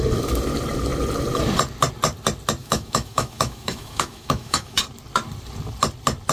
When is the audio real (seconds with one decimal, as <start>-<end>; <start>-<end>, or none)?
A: 0.0-2.6; 4.8-6.3

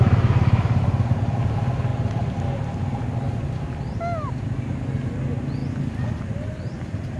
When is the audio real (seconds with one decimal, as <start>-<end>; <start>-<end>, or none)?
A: 0.0-7.2

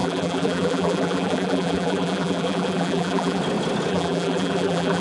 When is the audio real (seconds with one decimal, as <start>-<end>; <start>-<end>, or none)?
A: 3.4-3.9

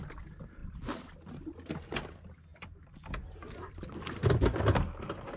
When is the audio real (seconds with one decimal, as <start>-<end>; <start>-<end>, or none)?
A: 0.0-5.4